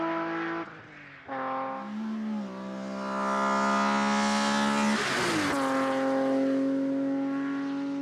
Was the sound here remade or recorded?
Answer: recorded